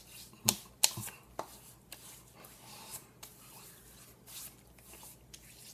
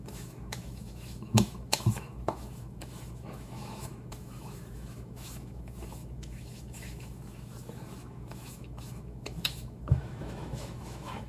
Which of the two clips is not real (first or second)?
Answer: second